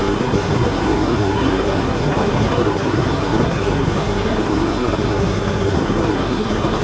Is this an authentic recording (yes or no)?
no